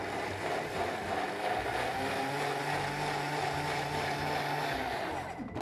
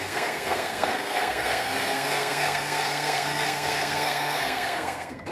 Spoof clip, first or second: second